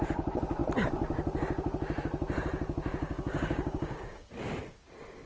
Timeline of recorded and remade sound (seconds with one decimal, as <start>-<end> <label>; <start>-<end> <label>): 0.0-3.0 recorded; 3.0-4.3 remade; 4.3-5.3 recorded